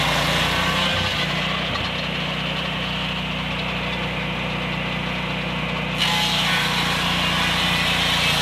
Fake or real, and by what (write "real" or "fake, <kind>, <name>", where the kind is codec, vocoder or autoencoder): real